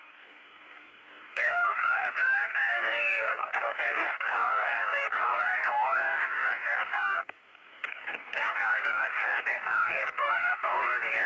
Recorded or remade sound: remade